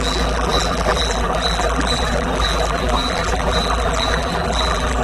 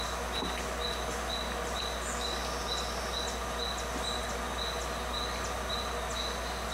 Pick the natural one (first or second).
second